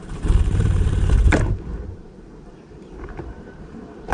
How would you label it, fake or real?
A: fake